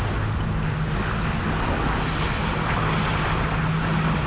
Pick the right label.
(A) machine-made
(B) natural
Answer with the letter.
B